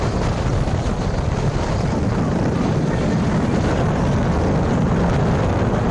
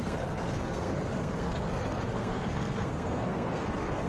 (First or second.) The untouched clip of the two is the first